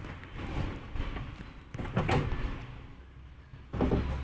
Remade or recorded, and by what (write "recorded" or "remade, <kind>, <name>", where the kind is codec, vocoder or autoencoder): recorded